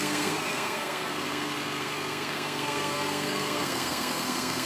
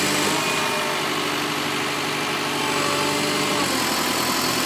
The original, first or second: second